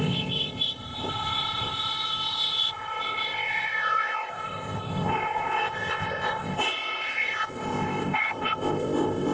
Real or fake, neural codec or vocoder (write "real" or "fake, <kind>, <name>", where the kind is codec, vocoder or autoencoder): fake, codec, ZipCodec